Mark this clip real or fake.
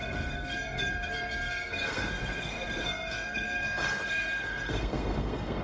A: fake